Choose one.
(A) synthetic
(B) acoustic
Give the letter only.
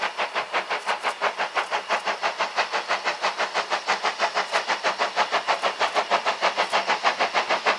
B